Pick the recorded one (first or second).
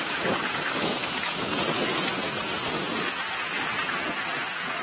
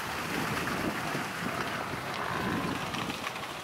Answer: second